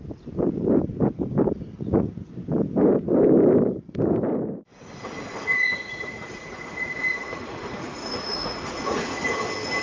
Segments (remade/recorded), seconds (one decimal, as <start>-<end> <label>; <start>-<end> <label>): 0.0-1.7 recorded; 1.7-2.3 remade; 2.3-5.5 recorded; 5.5-9.3 remade; 9.3-9.8 recorded